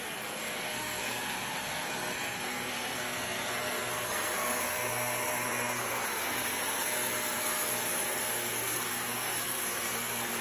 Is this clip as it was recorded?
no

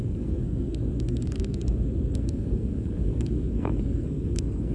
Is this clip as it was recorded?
no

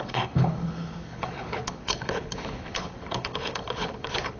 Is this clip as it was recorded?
no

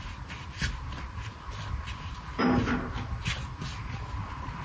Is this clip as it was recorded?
yes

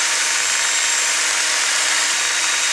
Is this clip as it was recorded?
no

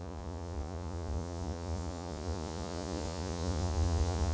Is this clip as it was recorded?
no